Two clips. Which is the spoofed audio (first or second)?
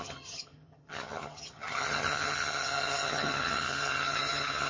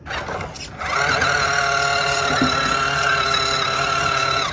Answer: first